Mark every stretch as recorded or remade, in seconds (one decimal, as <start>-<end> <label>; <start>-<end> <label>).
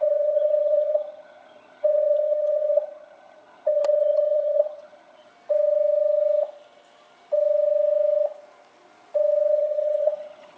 0.0-5.3 remade; 5.3-9.5 recorded; 9.5-10.6 remade